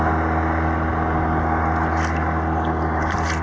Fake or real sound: real